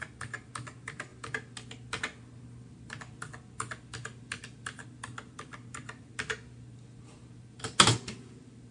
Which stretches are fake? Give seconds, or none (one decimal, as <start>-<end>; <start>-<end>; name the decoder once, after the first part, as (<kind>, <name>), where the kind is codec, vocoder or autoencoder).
none